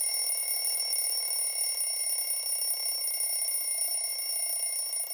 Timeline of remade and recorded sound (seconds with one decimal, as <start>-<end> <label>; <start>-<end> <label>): 0.0-5.1 recorded